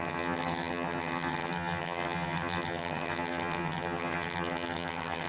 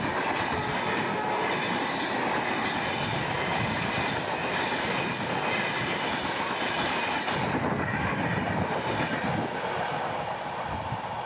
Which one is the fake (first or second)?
first